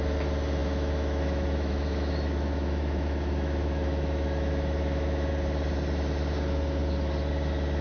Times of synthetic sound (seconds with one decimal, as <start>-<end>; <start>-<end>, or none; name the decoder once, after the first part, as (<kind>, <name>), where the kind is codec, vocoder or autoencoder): 0.6-5.3 (autoencoder, DAC-VAE)

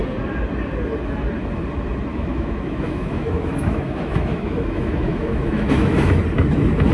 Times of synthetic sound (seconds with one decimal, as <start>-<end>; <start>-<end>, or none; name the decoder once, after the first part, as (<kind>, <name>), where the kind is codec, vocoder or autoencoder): 2.1-6.2 (autoencoder, DAC-VAE)

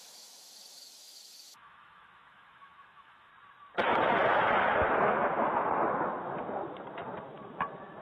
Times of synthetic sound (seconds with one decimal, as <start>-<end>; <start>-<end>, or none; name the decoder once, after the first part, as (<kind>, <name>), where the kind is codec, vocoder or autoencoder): 0.0-3.3 (autoencoder, DAC-VAE)